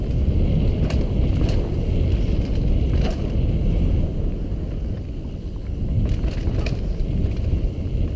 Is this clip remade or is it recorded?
recorded